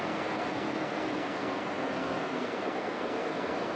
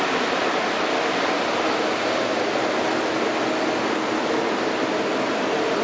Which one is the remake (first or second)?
first